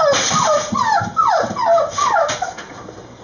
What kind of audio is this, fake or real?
fake